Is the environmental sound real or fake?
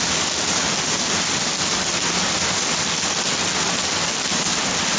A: real